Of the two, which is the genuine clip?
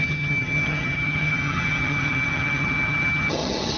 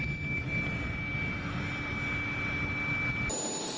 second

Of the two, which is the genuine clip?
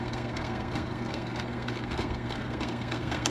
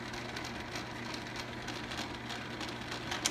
second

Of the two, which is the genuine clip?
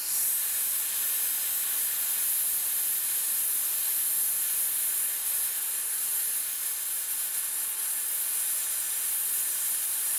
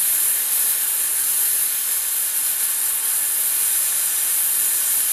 first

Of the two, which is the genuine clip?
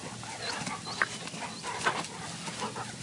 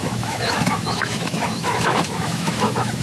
first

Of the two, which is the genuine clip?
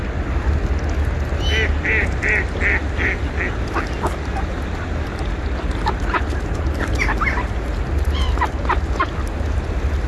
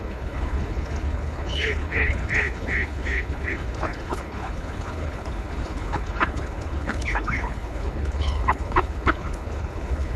first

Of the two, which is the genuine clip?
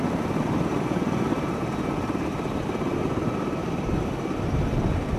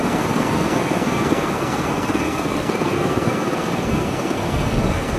first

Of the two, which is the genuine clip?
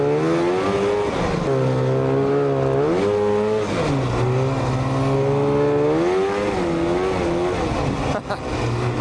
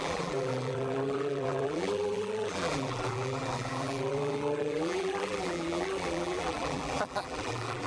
first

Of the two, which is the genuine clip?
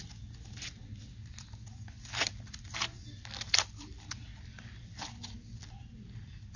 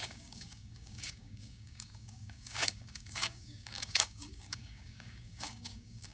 first